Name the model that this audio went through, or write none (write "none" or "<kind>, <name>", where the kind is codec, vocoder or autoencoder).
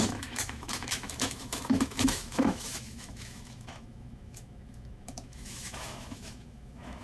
autoencoder, DAC-VAE